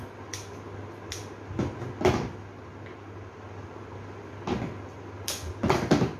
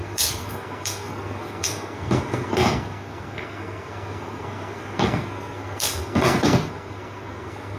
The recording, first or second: first